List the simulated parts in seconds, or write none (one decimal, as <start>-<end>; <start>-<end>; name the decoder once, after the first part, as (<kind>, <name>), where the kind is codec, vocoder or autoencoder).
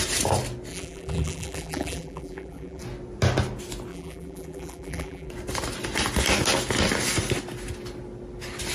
0.7-2.8 (vocoder, BigVGAN v2); 3.9-5.3